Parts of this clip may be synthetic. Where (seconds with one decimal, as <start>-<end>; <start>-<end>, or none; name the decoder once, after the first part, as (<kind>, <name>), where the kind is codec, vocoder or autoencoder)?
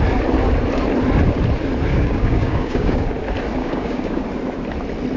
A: 1.9-3.0 (codec, DAC); 3.6-4.2